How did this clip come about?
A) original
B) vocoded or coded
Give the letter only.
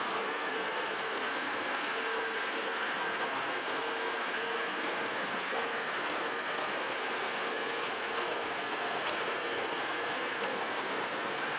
B